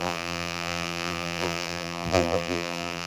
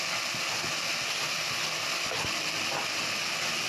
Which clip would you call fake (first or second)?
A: first